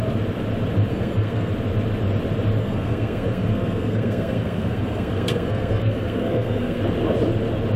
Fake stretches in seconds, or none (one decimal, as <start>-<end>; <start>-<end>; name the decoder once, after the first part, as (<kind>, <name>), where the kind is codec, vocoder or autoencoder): 0.9-1.5 (codec, SNAC); 2.6-6.8